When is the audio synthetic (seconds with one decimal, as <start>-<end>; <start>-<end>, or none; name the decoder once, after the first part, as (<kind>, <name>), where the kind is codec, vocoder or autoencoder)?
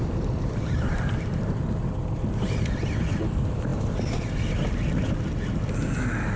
none